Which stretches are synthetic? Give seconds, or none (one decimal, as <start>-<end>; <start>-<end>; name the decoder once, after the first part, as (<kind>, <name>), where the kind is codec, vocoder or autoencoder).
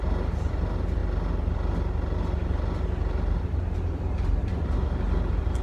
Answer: 0.0-1.0 (vocoder, BigVGAN v2); 4.4-5.6